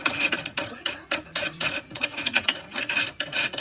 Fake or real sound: fake